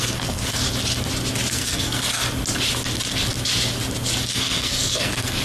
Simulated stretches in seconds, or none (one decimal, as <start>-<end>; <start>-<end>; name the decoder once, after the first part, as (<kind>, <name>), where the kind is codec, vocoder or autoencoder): 0.0-0.6 (codec, SNAC); 1.5-2.2; 4.3-5.4